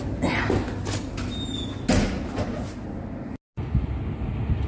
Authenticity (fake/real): real